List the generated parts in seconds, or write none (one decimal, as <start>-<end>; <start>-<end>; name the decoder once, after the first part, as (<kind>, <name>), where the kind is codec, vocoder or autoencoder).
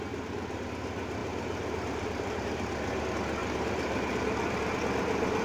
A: 1.2-3.0 (vocoder, BigVGAN v2); 3.4-4.5